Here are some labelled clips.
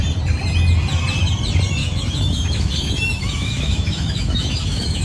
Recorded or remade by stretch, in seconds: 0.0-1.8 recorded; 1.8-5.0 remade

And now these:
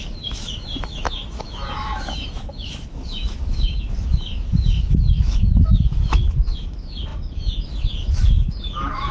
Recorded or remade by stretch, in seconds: 0.0-9.1 remade

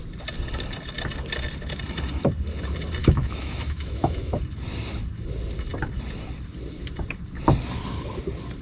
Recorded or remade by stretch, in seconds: 0.0-3.0 recorded; 3.0-4.4 remade; 4.4-8.6 recorded

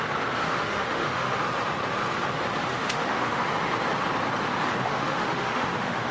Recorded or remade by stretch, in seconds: 0.0-0.4 recorded; 0.4-1.4 remade; 1.4-2.7 recorded; 2.7-3.4 remade; 3.4-4.8 recorded; 4.8-6.1 remade

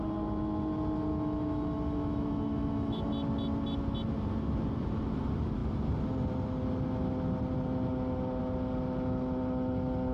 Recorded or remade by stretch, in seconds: 0.0-1.1 recorded; 1.1-3.1 remade; 3.1-10.1 recorded

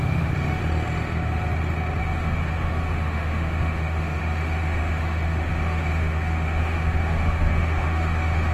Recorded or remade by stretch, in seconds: 0.0-0.6 remade; 0.6-2.0 recorded; 2.0-8.5 remade

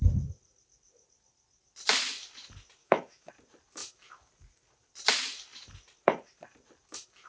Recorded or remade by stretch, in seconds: 0.0-2.8 recorded; 2.8-3.3 remade; 3.3-7.3 recorded

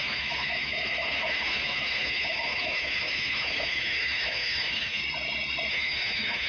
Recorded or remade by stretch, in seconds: 0.0-5.0 remade; 5.0-5.7 recorded; 5.7-6.5 remade